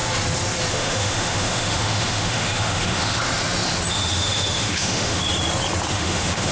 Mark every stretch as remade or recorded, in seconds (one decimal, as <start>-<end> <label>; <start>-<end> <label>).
0.0-0.7 recorded; 0.7-3.2 remade; 3.2-3.9 recorded; 3.9-5.2 remade; 5.2-5.9 recorded; 5.9-6.5 remade